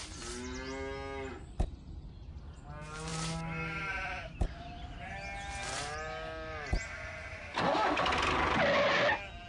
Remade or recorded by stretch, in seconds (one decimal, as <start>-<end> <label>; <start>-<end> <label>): 0.0-9.5 recorded